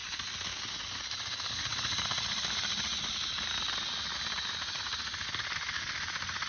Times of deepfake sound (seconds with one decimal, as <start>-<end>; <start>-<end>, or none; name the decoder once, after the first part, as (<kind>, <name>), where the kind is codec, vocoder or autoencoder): none